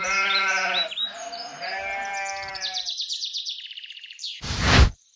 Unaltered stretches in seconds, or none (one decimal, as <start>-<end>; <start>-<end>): none